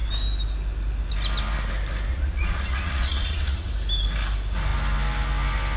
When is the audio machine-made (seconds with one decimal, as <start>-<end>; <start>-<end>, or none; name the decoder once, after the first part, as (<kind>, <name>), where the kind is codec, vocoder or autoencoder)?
2.1-3.7 (vocoder, Vocos)